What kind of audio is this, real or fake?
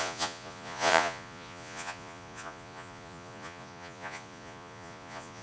fake